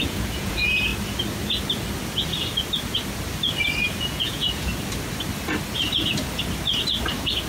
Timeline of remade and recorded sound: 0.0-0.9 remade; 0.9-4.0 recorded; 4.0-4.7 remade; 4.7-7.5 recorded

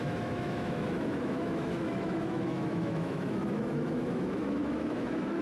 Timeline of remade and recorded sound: 0.0-5.4 remade

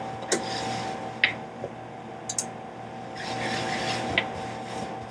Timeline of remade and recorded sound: 0.0-5.1 recorded

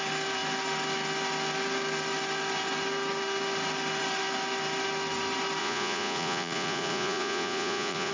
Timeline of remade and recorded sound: 0.0-5.6 recorded; 5.6-8.1 remade